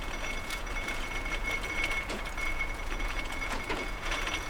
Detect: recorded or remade remade